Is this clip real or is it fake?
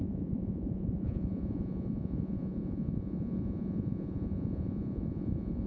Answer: fake